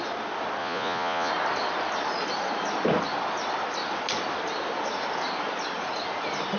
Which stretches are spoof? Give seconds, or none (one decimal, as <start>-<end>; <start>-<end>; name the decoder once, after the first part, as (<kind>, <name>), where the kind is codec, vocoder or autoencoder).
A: 0.6-1.3 (vocoder, Vocos)

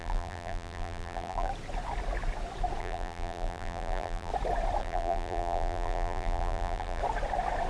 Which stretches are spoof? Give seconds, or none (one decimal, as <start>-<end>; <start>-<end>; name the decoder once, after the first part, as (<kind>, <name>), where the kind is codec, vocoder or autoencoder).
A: 0.0-1.5 (vocoder, BigVGAN v2); 2.8-4.3; 4.8-7.0

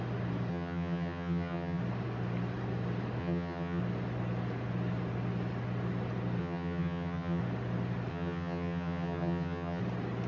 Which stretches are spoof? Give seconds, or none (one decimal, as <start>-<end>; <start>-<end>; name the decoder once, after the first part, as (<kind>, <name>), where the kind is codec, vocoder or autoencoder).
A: 0.5-1.8 (vocoder, HiFi-GAN); 3.2-3.8; 6.4-7.4; 8.1-9.8

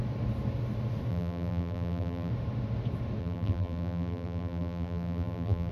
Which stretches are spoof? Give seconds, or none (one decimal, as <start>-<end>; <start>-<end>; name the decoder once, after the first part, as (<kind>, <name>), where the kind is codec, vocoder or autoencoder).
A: 1.1-2.3 (vocoder, BigVGAN v2); 3.2-5.7

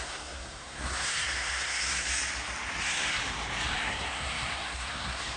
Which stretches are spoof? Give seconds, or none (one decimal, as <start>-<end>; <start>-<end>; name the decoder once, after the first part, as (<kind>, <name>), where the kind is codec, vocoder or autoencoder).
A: 0.0-2.1 (codec, SNAC); 2.8-3.2; 3.8-5.4

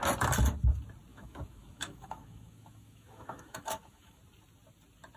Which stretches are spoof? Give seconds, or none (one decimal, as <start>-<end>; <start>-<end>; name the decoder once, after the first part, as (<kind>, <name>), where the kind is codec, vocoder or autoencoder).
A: 1.1-4.2 (autoencoder, DAC-VAE)